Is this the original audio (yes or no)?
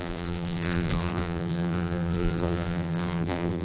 no